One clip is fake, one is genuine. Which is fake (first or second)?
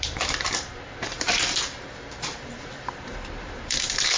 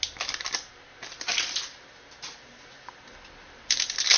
first